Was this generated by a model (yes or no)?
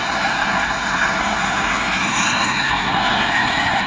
yes